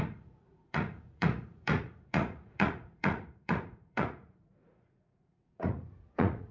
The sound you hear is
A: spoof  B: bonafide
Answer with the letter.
A